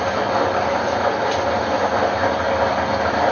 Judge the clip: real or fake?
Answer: real